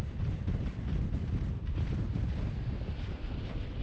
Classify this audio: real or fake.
real